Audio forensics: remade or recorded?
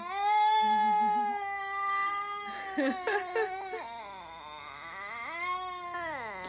recorded